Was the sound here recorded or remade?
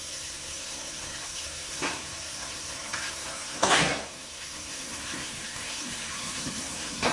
remade